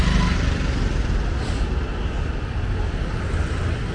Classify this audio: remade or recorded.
recorded